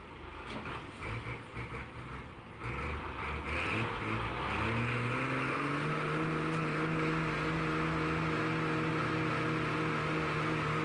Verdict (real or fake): real